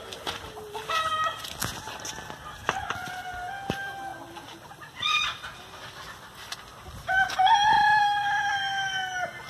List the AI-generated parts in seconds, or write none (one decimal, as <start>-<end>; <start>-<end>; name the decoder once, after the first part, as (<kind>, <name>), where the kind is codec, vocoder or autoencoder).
none